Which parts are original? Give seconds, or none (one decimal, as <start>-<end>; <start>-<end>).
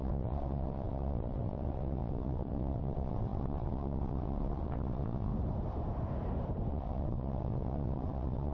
5.3-6.7